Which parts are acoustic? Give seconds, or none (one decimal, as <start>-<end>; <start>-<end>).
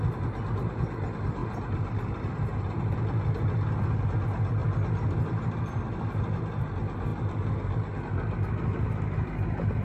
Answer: 0.0-1.4; 2.8-9.8